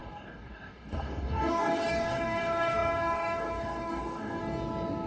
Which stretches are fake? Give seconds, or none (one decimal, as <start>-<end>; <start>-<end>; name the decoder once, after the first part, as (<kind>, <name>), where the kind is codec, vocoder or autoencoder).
0.0-4.4 (codec, DAC)